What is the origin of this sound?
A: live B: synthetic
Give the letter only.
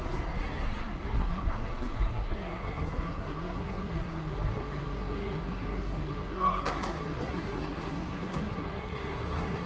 B